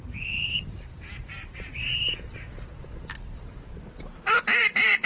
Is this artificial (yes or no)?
yes